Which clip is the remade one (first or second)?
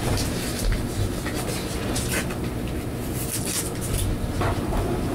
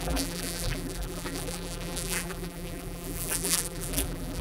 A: second